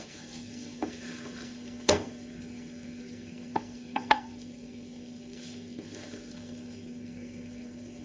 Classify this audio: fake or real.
fake